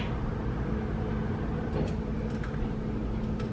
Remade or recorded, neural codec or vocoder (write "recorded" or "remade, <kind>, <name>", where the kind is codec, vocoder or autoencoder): recorded